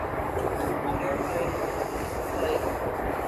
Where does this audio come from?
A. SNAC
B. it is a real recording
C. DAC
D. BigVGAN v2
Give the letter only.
B